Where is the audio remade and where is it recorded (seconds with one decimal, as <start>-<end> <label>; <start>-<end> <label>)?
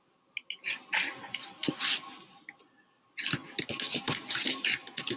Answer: 0.0-5.2 recorded